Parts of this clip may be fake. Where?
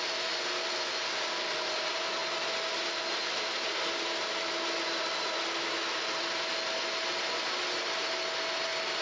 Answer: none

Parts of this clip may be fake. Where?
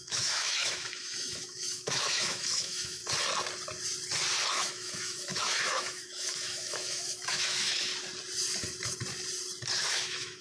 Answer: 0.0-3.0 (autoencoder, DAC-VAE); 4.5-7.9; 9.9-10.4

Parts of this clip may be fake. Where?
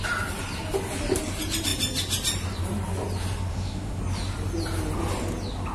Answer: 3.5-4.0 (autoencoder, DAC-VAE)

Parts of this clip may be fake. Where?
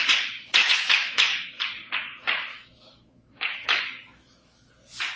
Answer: 0.6-1.5 (autoencoder, DAC-VAE); 2.5-4.7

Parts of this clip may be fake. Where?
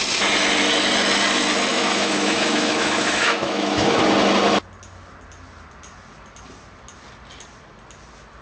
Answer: 1.7-4.0 (autoencoder, DAC-VAE)